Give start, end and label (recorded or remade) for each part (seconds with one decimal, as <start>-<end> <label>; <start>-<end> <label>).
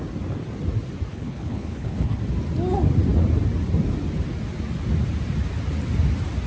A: 0.0-1.1 recorded; 1.1-2.2 remade; 2.2-6.5 recorded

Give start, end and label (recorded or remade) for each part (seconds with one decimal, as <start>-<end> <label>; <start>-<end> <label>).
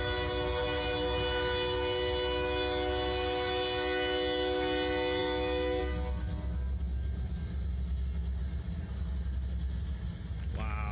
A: 0.0-10.9 recorded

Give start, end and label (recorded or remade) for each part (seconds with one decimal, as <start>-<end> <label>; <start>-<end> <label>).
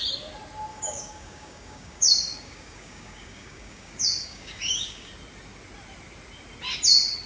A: 0.0-0.7 recorded; 0.7-5.1 remade; 5.1-7.3 recorded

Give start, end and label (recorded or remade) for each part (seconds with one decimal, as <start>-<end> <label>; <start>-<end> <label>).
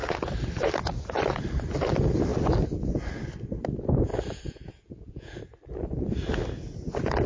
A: 0.0-4.1 recorded; 4.1-5.4 remade; 5.4-7.3 recorded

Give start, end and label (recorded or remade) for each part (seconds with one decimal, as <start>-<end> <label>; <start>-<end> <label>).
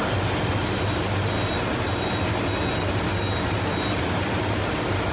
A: 0.0-5.1 recorded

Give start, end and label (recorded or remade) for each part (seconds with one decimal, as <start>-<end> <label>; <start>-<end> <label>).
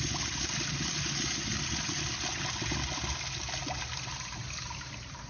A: 0.0-5.3 recorded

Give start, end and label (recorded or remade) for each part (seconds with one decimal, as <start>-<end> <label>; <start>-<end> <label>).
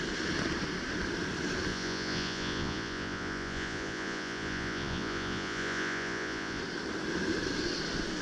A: 0.0-1.7 recorded; 1.7-6.6 remade; 6.6-8.2 recorded